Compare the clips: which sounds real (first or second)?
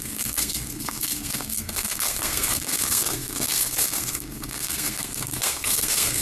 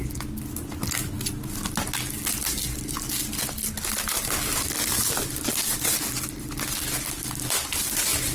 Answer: second